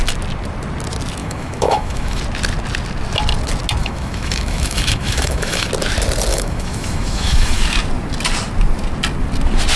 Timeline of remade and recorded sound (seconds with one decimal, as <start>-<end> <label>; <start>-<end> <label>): 0.0-1.2 recorded; 1.2-2.2 remade; 2.2-3.8 recorded; 3.8-5.7 remade; 5.7-6.3 recorded; 6.3-7.6 remade; 7.6-9.8 recorded